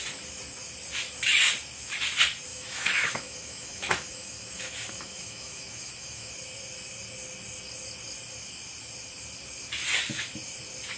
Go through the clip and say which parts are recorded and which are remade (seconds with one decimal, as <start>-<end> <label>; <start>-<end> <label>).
0.0-2.5 recorded; 2.5-6.3 remade; 6.3-11.0 recorded